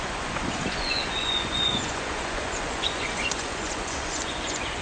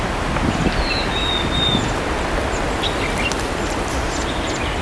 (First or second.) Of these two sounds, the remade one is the first